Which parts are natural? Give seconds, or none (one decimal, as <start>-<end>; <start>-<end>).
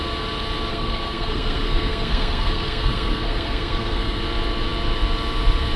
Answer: 0.0-0.7; 4.2-5.8